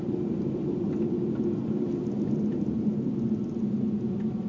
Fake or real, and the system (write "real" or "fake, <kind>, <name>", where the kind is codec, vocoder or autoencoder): real